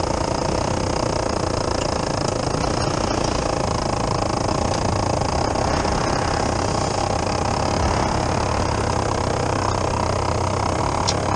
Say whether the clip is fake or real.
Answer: real